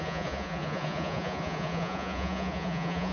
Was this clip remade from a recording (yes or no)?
yes